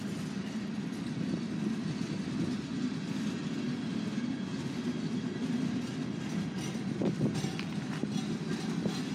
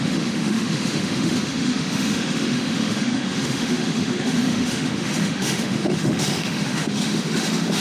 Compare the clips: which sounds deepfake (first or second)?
second